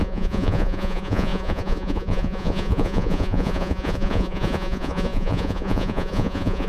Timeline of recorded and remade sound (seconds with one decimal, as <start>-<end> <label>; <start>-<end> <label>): 0.0-6.7 remade